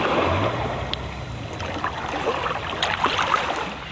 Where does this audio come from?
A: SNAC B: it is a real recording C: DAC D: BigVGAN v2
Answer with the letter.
B